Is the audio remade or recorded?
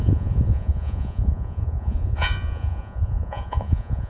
remade